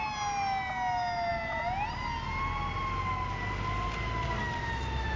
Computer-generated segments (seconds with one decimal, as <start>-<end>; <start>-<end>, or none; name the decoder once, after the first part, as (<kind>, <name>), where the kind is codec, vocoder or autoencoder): none